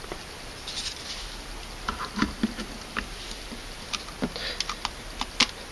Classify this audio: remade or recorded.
recorded